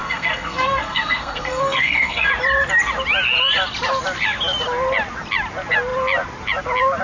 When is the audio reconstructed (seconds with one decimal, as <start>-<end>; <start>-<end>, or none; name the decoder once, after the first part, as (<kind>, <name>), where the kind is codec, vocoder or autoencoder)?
0.0-2.3 (codec, SNAC)